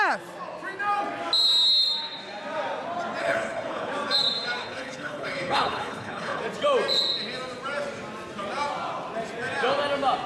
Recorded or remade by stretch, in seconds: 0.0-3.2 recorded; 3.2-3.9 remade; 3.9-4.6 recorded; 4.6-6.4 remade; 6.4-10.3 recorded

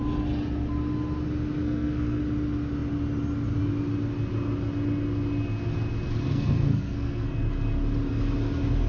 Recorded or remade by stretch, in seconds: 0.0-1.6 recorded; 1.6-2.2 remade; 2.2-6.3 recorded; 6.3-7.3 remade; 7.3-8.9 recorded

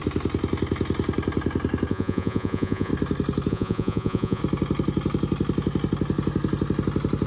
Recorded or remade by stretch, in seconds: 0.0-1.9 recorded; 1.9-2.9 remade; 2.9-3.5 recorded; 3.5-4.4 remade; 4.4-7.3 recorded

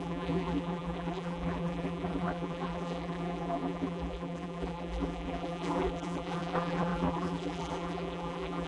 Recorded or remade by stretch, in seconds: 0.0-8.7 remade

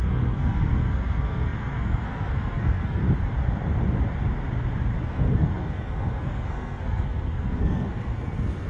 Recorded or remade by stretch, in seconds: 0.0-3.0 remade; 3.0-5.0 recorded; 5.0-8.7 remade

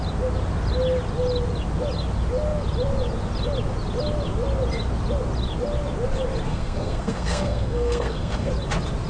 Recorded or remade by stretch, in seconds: 0.0-6.5 recorded; 6.5-8.5 remade; 8.5-9.1 recorded

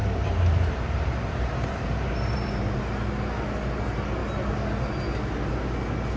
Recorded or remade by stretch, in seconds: 0.0-2.8 remade; 2.8-6.2 recorded